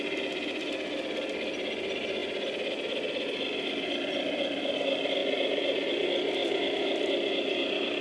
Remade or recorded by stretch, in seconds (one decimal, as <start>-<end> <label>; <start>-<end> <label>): 0.0-5.2 recorded; 5.2-5.9 remade; 5.9-6.4 recorded; 6.4-7.1 remade; 7.1-8.0 recorded